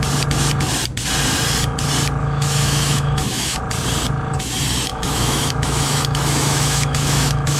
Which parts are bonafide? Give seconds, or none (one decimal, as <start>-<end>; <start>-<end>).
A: 0.0-2.2; 3.6-4.9